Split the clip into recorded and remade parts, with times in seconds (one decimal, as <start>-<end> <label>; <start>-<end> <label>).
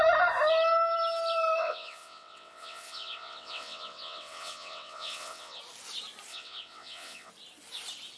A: 0.0-1.6 recorded; 1.6-5.6 remade; 5.6-6.3 recorded; 6.3-7.3 remade; 7.3-8.2 recorded